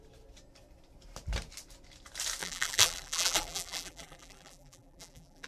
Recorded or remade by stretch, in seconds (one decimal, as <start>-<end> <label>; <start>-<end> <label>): 0.0-2.4 recorded; 2.4-5.5 remade